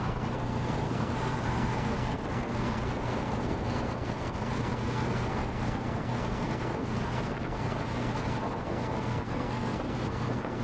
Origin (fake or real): fake